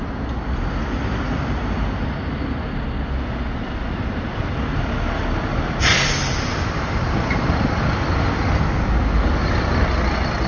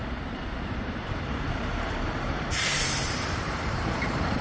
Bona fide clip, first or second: first